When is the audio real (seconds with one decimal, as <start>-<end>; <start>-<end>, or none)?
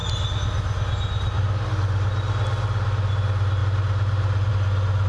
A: 0.0-5.1